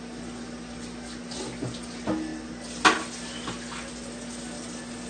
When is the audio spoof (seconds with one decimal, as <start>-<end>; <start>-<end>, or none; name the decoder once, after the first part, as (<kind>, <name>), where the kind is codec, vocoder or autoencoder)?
none